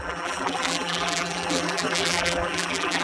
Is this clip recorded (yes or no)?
no